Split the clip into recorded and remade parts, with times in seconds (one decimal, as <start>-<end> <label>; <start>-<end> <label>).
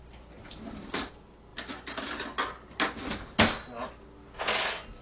0.0-5.0 recorded